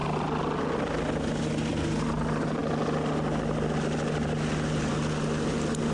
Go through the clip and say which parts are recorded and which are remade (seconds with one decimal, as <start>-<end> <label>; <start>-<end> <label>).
0.0-5.9 recorded